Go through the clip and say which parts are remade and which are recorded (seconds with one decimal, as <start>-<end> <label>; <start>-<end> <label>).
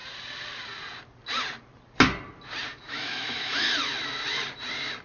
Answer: 0.0-2.7 recorded; 2.7-3.7 remade; 3.7-5.0 recorded